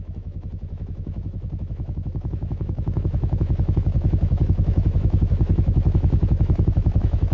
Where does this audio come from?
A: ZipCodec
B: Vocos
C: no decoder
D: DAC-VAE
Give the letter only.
D